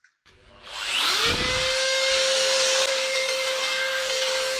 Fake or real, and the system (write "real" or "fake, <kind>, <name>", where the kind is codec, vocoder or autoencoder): fake, codec, DAC